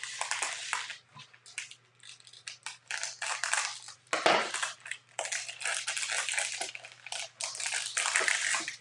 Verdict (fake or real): real